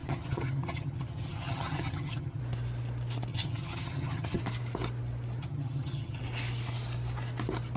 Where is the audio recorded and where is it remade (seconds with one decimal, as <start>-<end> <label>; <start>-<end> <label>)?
0.0-2.4 remade; 2.4-3.3 recorded; 3.3-4.4 remade; 4.4-5.4 recorded; 5.4-6.2 remade; 6.2-7.8 recorded